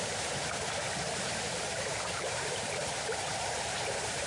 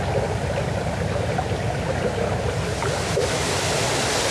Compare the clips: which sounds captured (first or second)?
second